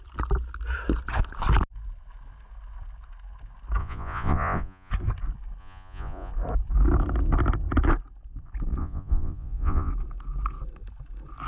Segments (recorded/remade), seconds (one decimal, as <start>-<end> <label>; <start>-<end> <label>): 0.0-3.8 recorded; 3.8-4.9 remade; 4.9-5.6 recorded; 5.6-6.3 remade; 6.3-8.8 recorded; 8.8-9.9 remade; 9.9-11.5 recorded